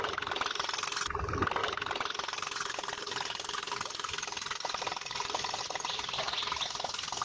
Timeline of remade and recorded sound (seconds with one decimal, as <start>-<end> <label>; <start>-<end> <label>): 0.0-7.2 recorded